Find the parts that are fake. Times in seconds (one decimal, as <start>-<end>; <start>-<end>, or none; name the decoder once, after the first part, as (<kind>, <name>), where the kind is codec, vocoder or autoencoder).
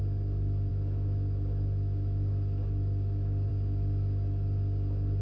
0.7-3.5 (autoencoder, DAC-VAE)